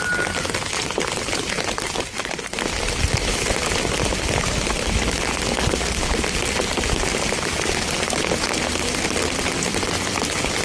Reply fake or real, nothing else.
real